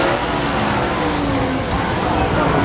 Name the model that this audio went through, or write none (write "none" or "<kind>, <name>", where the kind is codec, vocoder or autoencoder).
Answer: none